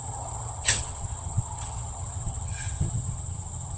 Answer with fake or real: fake